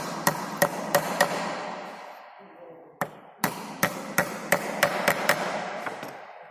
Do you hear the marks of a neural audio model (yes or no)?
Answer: no